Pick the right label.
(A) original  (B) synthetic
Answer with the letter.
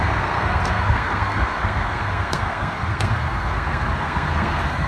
B